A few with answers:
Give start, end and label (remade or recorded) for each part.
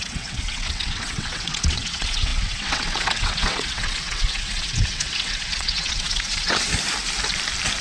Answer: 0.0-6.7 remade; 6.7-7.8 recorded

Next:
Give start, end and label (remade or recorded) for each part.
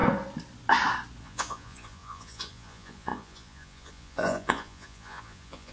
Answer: 0.0-1.2 recorded; 1.2-5.7 remade